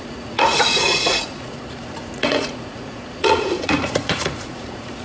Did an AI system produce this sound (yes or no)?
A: yes